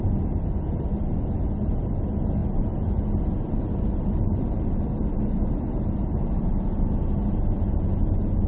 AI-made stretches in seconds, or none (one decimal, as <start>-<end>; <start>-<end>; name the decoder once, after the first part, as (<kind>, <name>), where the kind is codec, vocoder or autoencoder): none